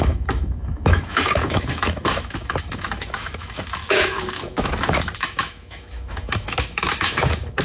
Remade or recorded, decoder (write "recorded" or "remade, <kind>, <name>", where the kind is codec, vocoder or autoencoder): remade, autoencoder, DAC-VAE